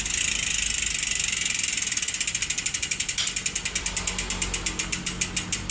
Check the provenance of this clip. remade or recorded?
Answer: recorded